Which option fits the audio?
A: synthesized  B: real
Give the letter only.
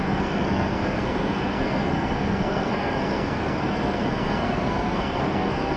A